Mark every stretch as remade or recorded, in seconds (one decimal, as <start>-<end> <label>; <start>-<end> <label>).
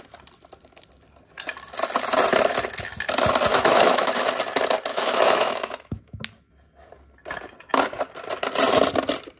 0.0-3.5 recorded; 3.5-4.1 remade; 4.1-4.9 recorded; 4.9-6.2 remade; 6.2-9.4 recorded